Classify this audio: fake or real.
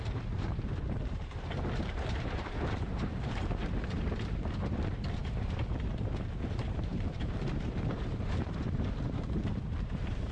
fake